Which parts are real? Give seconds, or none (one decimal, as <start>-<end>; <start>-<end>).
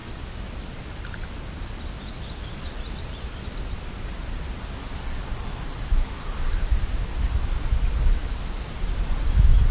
0.0-9.7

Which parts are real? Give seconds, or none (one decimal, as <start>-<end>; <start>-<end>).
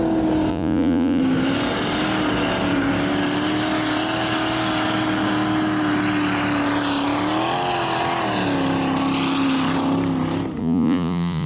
0.0-0.5; 1.2-10.6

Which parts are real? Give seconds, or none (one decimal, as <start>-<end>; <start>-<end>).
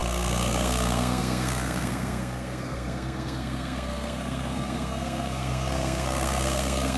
none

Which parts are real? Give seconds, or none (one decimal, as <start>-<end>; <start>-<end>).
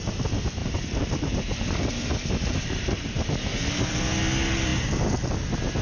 0.0-0.6; 3.9-5.8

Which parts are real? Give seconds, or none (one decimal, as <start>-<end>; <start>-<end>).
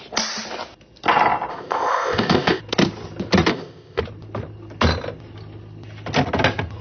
0.0-1.5; 2.6-3.5; 4.0-6.8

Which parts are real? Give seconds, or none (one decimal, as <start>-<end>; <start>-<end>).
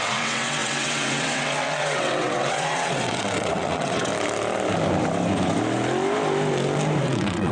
4.1-7.0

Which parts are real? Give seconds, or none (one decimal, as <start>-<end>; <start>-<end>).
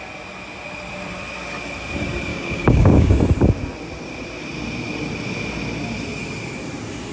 0.0-2.3; 3.1-7.1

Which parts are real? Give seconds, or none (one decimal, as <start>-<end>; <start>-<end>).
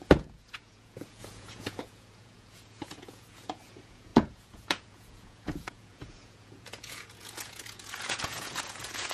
none